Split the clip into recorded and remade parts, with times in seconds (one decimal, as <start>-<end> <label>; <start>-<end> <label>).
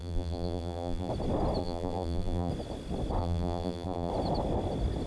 0.0-1.1 remade; 1.1-1.6 recorded; 1.6-2.5 remade; 2.5-3.2 recorded; 3.2-4.1 remade; 4.1-5.1 recorded